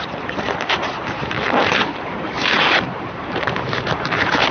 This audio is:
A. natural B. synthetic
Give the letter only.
B